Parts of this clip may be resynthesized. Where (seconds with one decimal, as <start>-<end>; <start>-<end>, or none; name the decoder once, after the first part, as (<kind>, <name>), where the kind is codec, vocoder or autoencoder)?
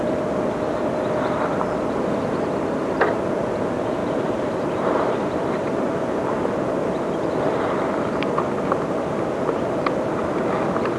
4.0-5.7 (vocoder, BigVGAN v2)